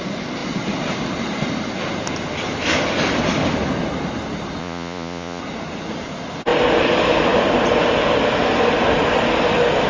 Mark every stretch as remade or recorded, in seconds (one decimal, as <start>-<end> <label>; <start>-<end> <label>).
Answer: 0.0-4.6 recorded; 4.6-5.4 remade; 5.4-9.9 recorded